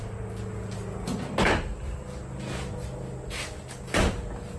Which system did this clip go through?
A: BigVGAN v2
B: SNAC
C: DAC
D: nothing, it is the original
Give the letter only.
D